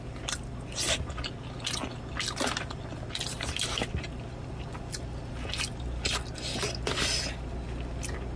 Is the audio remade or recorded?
recorded